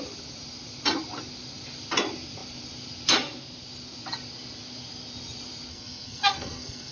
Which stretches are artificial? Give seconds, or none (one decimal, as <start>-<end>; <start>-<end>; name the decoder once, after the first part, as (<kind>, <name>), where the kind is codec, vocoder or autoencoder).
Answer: 5.7-6.9 (codec, SNAC)